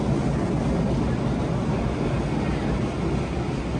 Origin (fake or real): real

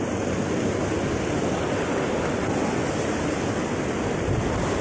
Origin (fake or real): real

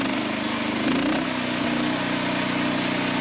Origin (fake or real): real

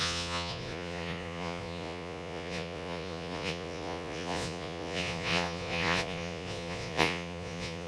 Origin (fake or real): fake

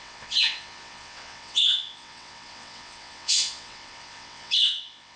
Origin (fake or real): fake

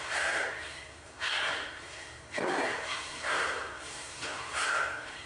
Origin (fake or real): fake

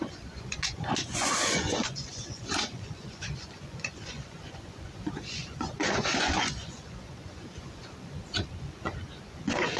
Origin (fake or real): fake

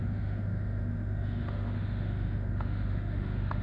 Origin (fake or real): fake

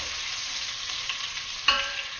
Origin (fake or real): fake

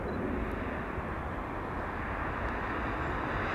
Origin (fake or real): real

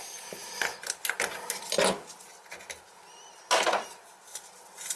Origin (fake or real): real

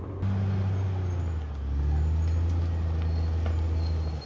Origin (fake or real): real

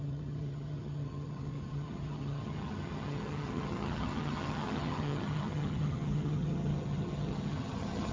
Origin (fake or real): fake